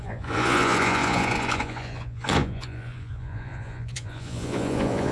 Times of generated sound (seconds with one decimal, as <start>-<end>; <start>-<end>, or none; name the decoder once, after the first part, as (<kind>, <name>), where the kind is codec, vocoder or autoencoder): 0.0-5.1 (vocoder, Vocos)